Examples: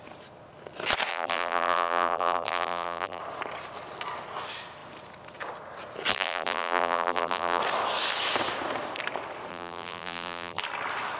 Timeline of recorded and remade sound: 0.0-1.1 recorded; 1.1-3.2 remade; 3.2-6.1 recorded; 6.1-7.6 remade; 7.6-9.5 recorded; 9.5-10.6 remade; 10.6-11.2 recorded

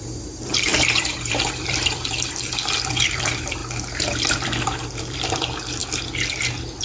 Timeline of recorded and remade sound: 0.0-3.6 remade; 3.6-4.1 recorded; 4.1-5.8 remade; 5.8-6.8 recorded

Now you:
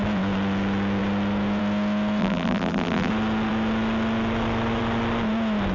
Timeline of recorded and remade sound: 0.0-2.2 recorded; 2.2-3.1 remade; 3.1-5.7 recorded